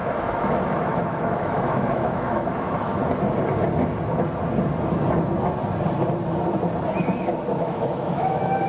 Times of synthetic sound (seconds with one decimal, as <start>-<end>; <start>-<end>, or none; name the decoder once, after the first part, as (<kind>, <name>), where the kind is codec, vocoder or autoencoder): 0.0-3.0 (autoencoder, DAC-VAE); 7.5-8.7